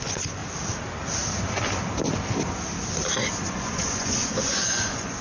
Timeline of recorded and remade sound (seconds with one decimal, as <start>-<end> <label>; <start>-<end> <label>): 0.0-0.4 remade; 0.4-3.5 recorded; 3.5-5.2 remade